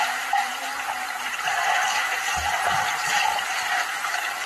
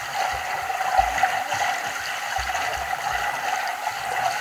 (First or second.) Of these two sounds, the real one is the second